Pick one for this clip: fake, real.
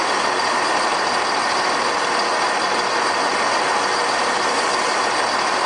real